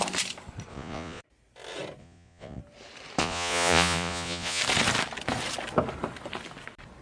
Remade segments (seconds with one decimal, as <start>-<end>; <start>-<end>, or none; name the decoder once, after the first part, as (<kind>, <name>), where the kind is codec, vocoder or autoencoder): 0.7-1.2 (vocoder, Vocos); 2.0-2.6; 3.2-4.6